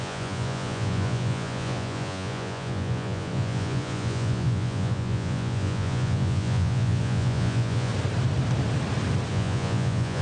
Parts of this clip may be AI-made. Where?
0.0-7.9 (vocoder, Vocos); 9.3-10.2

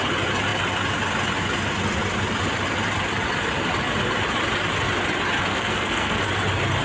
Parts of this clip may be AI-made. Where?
5.5-6.3 (codec, SNAC)

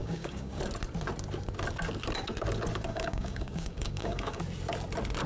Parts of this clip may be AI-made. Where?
0.0-0.6 (codec, DAC); 2.9-4.4